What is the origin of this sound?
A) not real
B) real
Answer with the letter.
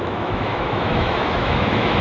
A